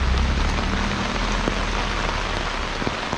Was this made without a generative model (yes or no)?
yes